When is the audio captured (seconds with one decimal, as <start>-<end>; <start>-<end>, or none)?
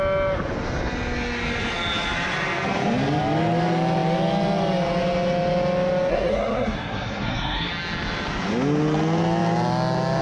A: 0.0-6.1; 7.7-10.2